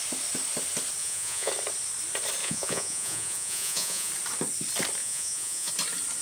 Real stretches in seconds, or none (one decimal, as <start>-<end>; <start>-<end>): 0.0-1.0; 1.5-2.4; 4.1-5.0; 5.7-6.2